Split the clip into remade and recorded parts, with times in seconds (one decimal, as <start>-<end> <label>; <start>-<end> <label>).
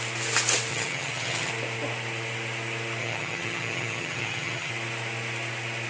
0.0-0.7 recorded; 0.7-1.5 remade; 1.5-3.0 recorded; 3.0-4.7 remade; 4.7-5.9 recorded